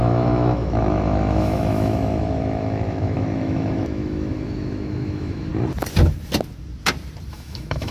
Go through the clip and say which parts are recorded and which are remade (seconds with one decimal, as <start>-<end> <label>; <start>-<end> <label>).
0.0-5.5 remade; 5.5-7.3 recorded; 7.3-7.9 remade